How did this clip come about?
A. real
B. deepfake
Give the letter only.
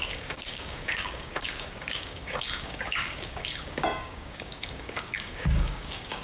B